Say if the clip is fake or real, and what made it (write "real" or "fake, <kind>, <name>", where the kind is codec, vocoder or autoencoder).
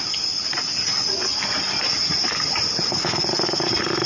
real